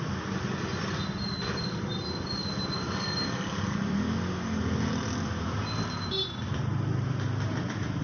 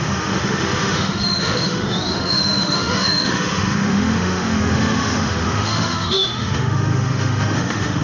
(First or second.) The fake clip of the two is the second